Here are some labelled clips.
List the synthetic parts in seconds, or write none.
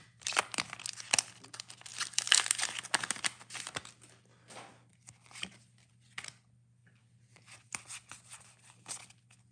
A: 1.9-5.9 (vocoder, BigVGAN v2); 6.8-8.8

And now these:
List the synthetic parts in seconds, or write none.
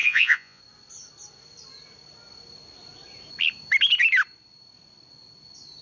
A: 0.0-0.6 (vocoder, Vocos)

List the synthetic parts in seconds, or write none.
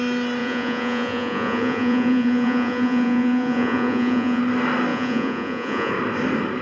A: 0.4-4.4 (vocoder, Vocos); 4.9-5.9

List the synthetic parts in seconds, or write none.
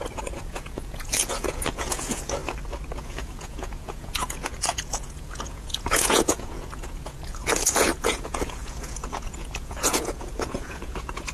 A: 0.0-2.4 (vocoder, Vocos); 3.0-11.3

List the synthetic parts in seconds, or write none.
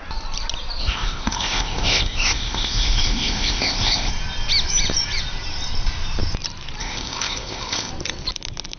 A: 0.8-4.1 (codec, ZipCodec); 6.8-7.9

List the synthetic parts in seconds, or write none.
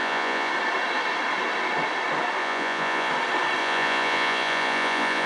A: 0.0-0.5 (vocoder, Vocos); 2.4-3.1; 3.6-5.3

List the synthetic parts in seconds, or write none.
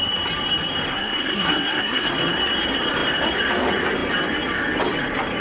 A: 0.9-2.1 (codec, SNAC)